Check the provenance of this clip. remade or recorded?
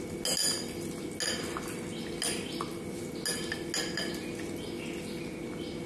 recorded